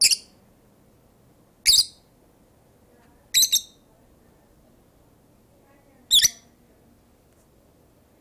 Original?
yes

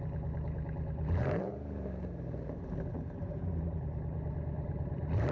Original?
no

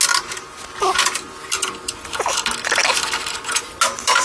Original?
yes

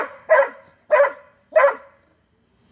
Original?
yes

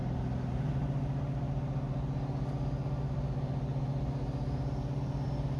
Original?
yes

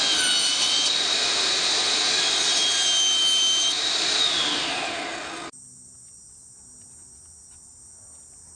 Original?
yes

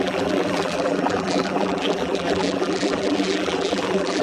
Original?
no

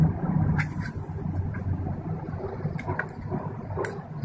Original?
yes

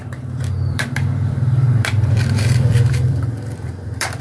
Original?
no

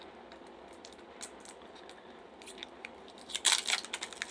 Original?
yes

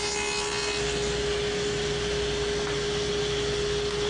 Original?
yes